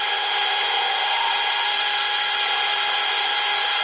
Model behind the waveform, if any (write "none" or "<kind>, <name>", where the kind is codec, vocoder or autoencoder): none